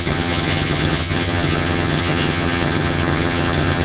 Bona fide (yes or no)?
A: no